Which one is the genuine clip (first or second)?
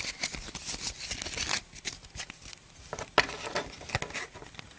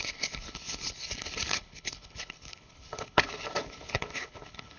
first